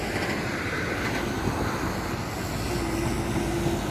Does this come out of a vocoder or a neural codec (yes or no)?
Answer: no